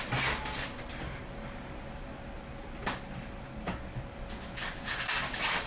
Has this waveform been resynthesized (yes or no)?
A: no